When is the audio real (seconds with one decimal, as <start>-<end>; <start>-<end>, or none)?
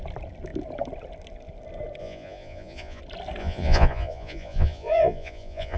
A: 0.0-2.0; 3.0-3.4